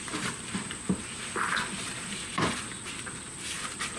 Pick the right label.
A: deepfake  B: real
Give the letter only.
B